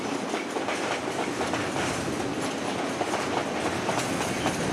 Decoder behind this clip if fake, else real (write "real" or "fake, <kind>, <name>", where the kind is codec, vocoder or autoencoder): real